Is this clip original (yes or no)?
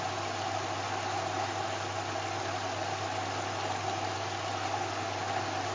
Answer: yes